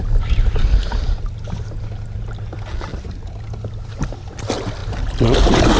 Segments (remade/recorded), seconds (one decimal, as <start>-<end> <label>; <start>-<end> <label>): 0.0-5.8 recorded